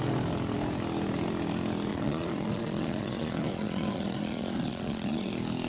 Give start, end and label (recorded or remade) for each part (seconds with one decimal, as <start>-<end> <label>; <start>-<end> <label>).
0.0-1.9 recorded; 1.9-5.3 remade; 5.3-5.7 recorded